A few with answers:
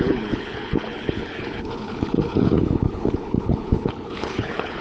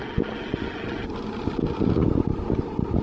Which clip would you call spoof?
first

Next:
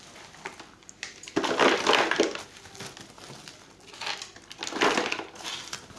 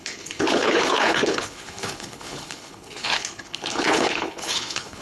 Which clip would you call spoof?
second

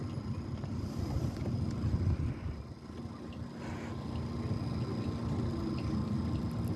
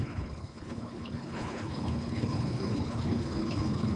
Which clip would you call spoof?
second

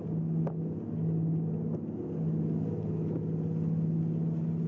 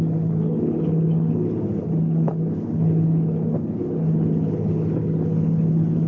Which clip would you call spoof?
second